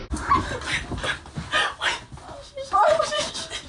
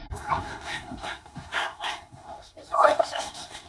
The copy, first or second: second